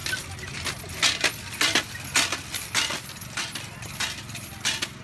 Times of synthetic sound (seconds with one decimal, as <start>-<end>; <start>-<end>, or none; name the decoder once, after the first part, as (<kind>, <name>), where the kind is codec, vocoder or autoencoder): none